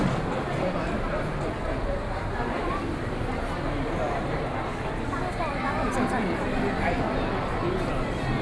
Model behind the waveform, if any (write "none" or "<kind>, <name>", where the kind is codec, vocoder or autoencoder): none